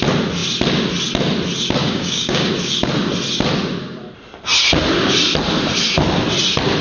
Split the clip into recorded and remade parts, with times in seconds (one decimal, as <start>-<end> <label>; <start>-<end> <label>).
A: 0.0-1.8 recorded; 1.8-2.5 remade; 2.5-6.8 recorded